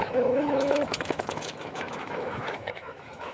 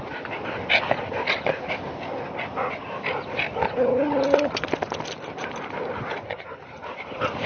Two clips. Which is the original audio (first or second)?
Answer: second